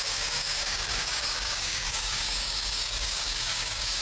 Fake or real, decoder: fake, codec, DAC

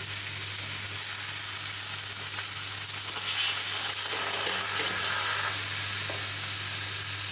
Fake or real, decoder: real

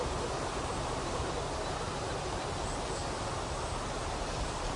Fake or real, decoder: real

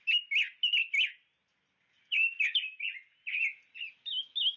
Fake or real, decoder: real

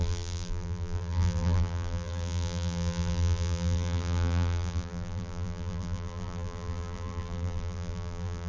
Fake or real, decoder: fake, vocoder, BigVGAN v2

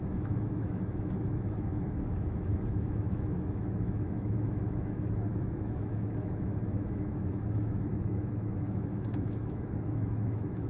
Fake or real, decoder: fake, autoencoder, DAC-VAE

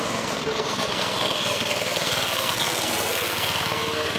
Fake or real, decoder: fake, codec, SNAC